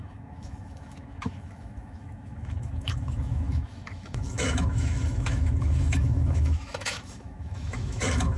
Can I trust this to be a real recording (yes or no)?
no